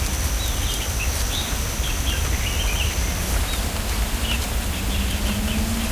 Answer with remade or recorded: recorded